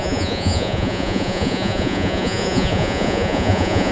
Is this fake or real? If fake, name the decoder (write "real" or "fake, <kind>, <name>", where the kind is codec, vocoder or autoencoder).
fake, vocoder, Vocos